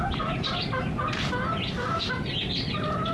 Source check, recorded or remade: recorded